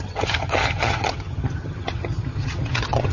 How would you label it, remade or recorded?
remade